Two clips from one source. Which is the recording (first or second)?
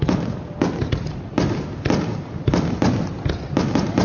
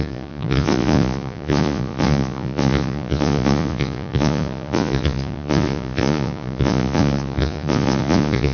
first